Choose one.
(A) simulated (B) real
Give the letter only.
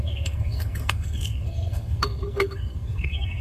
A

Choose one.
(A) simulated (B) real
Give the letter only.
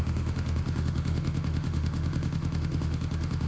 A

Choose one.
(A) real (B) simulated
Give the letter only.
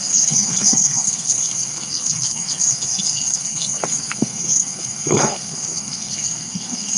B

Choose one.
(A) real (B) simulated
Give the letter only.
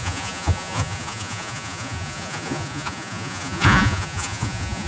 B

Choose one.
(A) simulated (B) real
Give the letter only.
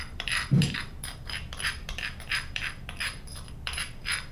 A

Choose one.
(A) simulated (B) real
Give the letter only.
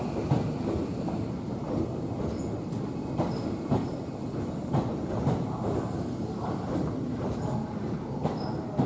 B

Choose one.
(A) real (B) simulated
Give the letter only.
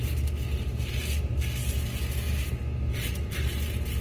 A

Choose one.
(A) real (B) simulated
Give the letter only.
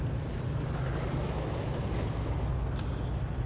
A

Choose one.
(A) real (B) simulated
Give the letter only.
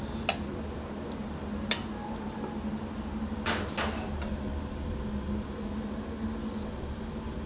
A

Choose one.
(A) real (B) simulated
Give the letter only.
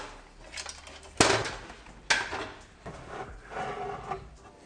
A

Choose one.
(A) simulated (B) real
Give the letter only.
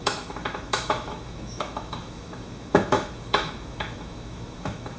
A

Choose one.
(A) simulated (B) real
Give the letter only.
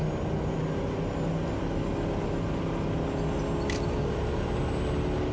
B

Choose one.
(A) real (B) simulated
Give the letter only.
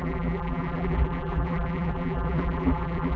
B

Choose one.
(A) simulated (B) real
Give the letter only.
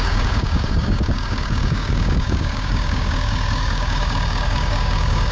A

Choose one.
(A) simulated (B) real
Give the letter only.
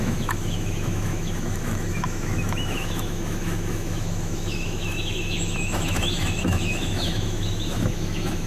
A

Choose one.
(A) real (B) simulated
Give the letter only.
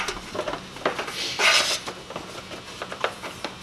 A